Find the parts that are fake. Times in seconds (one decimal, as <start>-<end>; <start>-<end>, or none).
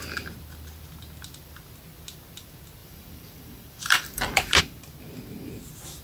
2.8-4.6